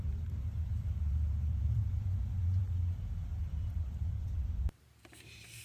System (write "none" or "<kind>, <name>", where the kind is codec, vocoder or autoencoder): vocoder, BigVGAN v2